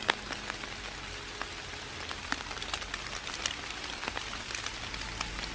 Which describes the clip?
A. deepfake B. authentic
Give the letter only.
B